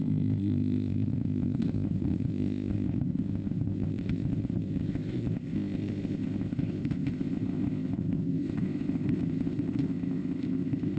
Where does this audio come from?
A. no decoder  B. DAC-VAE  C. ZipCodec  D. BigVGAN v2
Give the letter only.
C